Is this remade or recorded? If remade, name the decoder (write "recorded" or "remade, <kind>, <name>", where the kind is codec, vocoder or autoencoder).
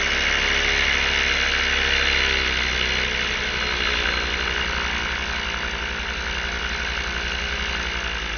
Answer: recorded